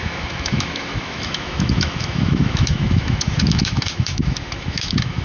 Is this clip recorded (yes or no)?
no